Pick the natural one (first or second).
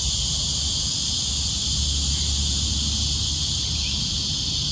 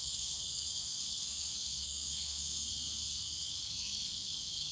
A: first